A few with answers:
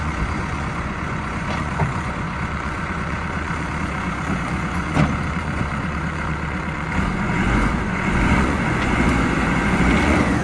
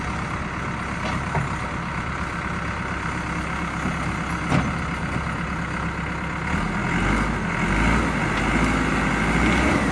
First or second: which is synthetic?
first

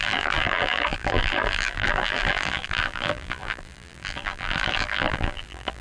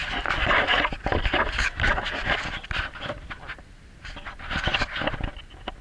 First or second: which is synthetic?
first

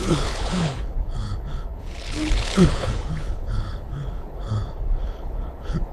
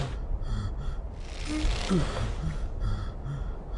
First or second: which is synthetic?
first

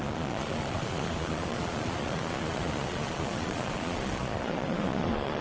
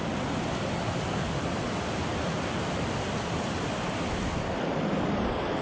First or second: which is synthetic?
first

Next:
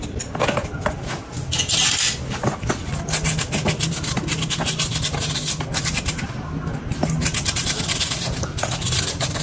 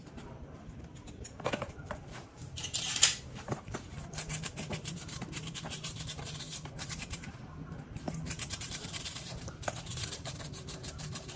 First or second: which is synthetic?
second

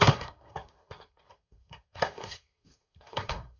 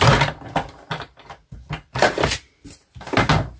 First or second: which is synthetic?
first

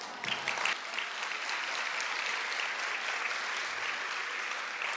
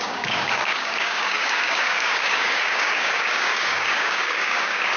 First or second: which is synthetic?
second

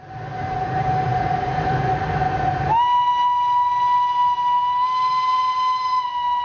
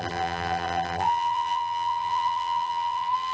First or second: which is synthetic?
second